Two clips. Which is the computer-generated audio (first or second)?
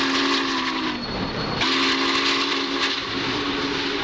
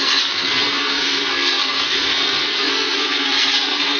second